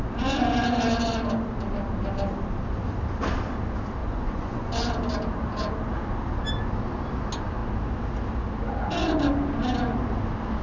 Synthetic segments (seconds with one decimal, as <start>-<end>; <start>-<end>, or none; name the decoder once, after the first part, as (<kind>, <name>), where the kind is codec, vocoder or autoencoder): 4.0-4.7 (vocoder, Vocos)